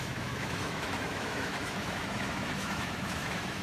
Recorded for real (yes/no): no